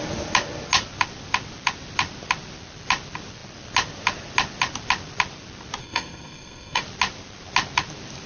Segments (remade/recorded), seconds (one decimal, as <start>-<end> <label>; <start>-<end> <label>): 0.0-5.8 recorded; 5.8-6.8 remade; 6.8-8.3 recorded